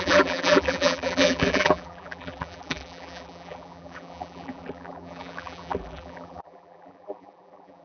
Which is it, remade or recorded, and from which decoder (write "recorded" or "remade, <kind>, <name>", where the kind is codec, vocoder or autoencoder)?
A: remade, vocoder, BigVGAN v2